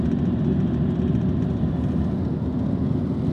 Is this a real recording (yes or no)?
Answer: yes